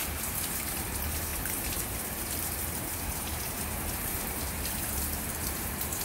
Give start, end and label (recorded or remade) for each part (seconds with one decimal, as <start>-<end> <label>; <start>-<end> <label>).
0.0-6.0 remade